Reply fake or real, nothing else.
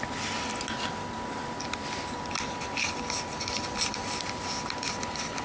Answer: real